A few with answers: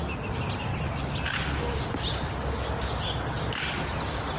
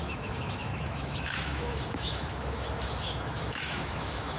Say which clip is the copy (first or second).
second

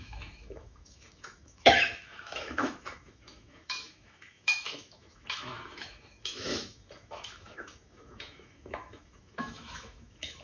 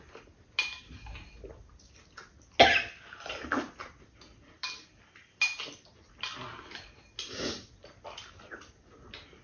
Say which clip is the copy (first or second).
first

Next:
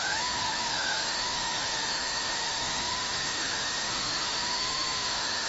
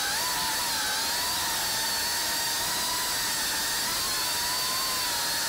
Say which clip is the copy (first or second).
first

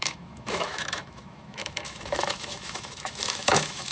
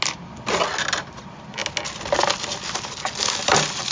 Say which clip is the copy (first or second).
first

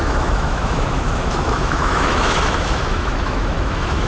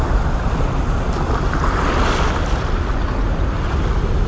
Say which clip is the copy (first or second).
first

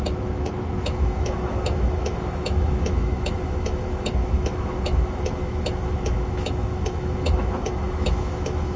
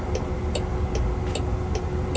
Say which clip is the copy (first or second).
first